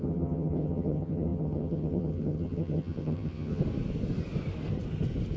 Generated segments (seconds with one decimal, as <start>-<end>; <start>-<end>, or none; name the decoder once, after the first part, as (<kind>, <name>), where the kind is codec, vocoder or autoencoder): 0.0-3.6 (vocoder, HiFi-GAN)